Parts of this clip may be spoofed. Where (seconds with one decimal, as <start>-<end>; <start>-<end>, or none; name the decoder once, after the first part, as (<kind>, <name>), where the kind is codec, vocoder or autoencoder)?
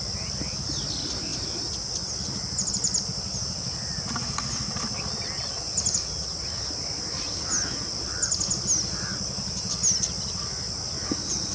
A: none